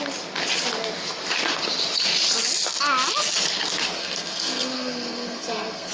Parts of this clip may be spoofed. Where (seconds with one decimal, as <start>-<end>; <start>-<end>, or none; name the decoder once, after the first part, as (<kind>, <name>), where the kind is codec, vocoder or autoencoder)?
4.0-5.9 (codec, SNAC)